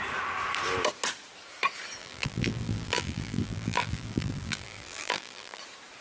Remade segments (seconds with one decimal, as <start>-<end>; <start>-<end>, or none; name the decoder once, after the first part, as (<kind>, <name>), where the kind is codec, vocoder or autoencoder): 2.0-5.6 (vocoder, BigVGAN v2)